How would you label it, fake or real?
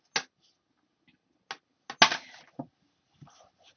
real